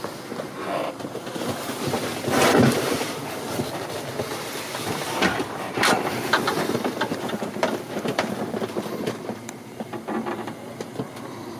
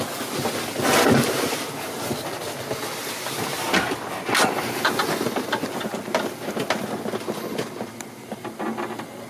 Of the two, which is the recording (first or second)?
second